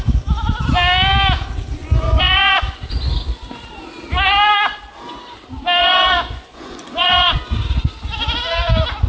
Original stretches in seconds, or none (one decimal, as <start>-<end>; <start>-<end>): 0.0-1.8; 2.8-5.8; 7.4-9.1